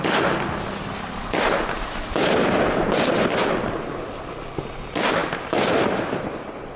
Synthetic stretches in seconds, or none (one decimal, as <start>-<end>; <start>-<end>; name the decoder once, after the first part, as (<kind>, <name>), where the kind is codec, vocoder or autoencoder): none